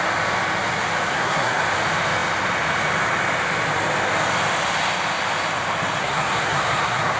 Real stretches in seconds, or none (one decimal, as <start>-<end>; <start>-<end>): 0.0-1.1; 1.6-6.0